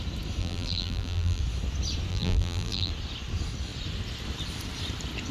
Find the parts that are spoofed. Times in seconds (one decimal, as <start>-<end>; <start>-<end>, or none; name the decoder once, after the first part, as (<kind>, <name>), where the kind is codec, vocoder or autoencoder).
0.4-1.4 (vocoder, BigVGAN v2); 2.1-2.9